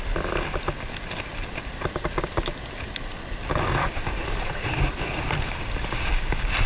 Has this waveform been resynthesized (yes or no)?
no